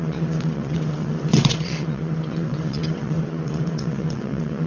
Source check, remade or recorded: remade